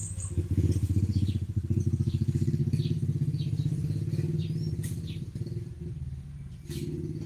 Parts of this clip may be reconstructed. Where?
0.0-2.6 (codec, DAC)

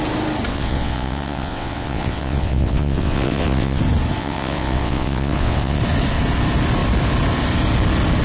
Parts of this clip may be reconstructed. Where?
0.5-3.8 (vocoder, WaveNeXt); 4.2-5.8

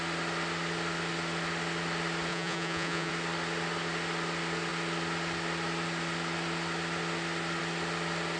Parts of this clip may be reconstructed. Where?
2.3-3.1 (vocoder, Vocos)

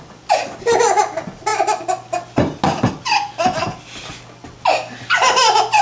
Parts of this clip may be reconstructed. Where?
none

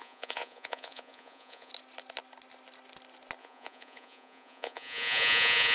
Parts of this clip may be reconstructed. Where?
0.0-1.7 (vocoder, Vocos); 3.4-5.7

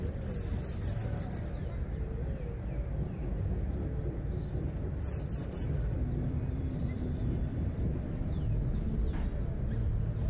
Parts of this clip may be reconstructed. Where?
5.4-7.8 (vocoder, BigVGAN v2)